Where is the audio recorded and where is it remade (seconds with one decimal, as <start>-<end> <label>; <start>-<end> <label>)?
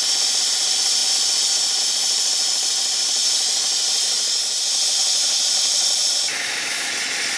0.0-6.3 recorded; 6.3-6.9 remade; 6.9-7.4 recorded